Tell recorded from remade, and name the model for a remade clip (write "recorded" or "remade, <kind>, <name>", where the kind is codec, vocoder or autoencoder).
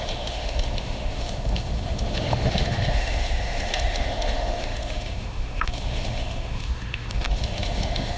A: remade, autoencoder, DAC-VAE